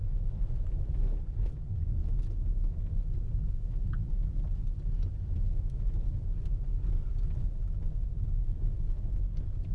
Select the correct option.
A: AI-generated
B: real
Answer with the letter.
B